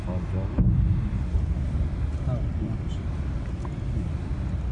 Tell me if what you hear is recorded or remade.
recorded